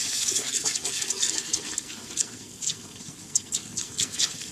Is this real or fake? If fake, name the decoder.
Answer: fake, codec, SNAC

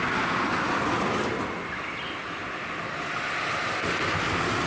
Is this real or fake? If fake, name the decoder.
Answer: real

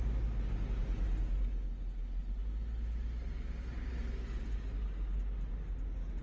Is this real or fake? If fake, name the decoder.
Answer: real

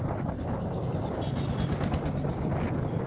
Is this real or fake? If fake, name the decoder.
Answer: real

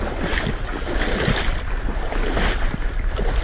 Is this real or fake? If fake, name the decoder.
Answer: real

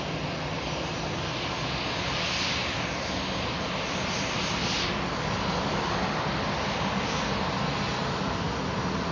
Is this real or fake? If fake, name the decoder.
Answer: real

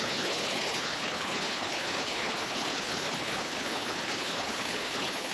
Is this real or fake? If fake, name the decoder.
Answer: fake, codec, HILCodec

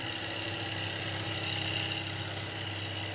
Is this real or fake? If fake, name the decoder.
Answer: real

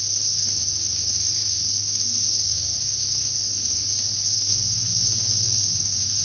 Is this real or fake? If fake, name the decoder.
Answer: fake, codec, SNAC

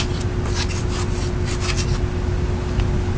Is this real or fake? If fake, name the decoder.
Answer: real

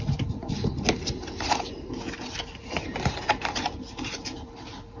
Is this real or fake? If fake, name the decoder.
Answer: real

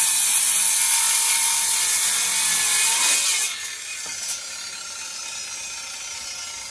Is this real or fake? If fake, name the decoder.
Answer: real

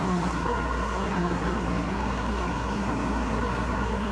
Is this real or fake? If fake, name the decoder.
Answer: fake, codec, SNAC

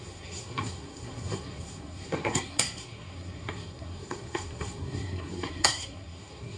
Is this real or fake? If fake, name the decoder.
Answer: fake, codec, SNAC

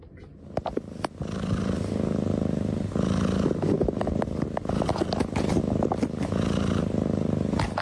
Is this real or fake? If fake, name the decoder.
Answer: real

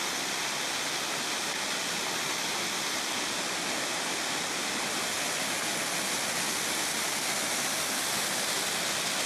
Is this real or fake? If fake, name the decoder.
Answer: real